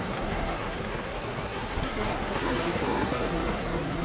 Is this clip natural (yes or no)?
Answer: no